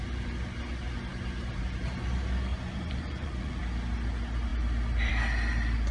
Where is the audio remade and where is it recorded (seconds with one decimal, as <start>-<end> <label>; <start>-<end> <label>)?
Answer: 0.0-2.5 recorded; 2.5-3.6 remade; 3.6-5.9 recorded